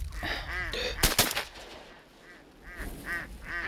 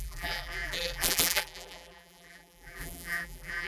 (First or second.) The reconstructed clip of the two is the second